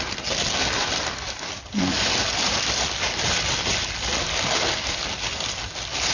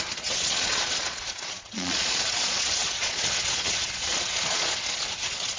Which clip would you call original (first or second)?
first